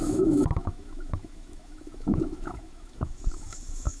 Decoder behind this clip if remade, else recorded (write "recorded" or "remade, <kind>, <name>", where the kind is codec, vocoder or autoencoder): remade, autoencoder, DAC-VAE